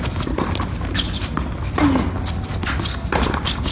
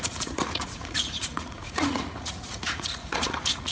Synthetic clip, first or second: second